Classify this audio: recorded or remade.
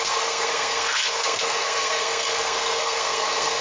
remade